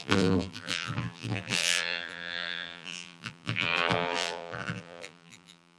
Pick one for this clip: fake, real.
fake